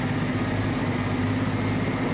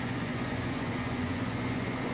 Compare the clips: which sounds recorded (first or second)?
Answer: first